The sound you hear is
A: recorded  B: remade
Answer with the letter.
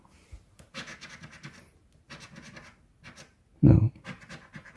A